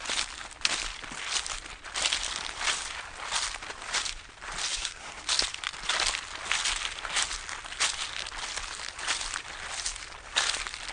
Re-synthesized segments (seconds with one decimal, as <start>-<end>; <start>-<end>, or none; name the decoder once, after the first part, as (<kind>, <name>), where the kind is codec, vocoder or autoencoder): 4.7-5.2 (codec, SNAC)